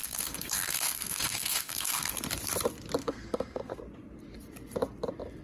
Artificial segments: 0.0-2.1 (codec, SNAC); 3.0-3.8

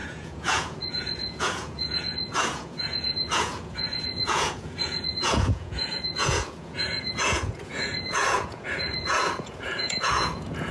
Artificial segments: 0.0-10.7 (vocoder, Vocos)

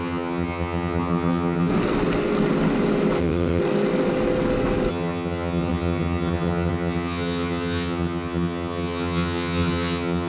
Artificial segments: 0.0-1.7 (vocoder, HiFi-GAN); 3.2-3.6; 4.9-10.3

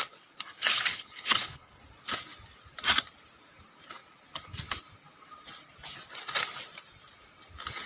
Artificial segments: 0.6-1.8 (codec, HILCodec)